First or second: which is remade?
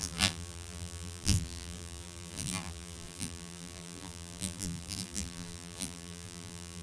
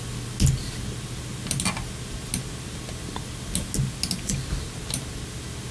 first